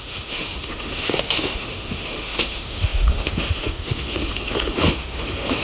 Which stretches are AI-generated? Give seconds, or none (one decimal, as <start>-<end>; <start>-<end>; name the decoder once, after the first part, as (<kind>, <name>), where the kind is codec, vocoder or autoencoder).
0.0-5.6 (autoencoder, DAC-VAE)